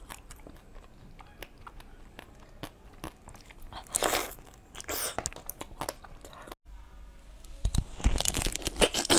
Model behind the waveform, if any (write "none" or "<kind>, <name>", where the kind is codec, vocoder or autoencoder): none